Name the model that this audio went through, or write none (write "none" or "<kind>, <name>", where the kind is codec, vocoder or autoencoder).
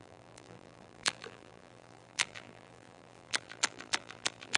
vocoder, BigVGAN v2